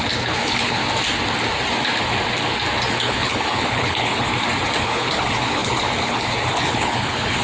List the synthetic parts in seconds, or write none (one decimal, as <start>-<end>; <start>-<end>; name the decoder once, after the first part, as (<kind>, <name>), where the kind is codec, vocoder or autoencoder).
0.0-0.8 (codec, HILCodec); 2.9-4.3; 4.8-7.4